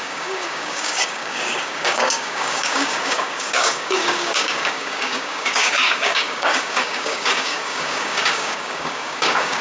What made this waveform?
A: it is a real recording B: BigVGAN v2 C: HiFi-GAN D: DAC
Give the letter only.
D